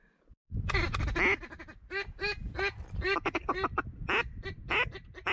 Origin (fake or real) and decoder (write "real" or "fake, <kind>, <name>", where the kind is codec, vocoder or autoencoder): real